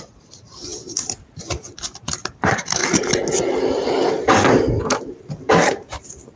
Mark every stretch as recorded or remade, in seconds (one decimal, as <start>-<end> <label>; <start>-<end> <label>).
0.0-2.8 remade; 2.8-4.1 recorded; 4.1-6.4 remade